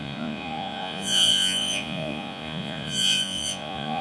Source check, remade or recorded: remade